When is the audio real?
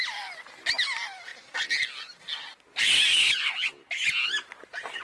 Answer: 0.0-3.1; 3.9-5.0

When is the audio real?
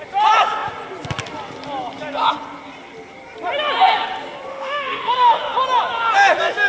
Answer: 0.0-4.5; 5.4-6.7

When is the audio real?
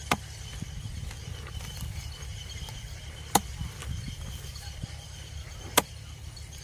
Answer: 0.0-6.6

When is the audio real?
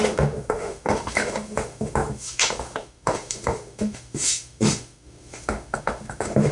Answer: none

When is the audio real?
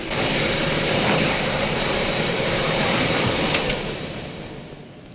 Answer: 0.0-0.6; 3.7-5.1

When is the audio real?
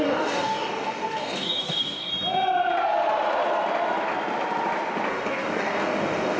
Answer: 2.1-5.1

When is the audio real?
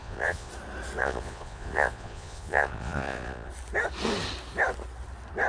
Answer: 0.5-1.0; 3.5-5.5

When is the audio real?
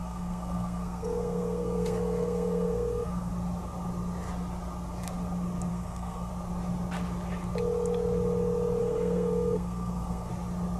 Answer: 3.3-5.7; 6.3-8.8; 10.3-10.8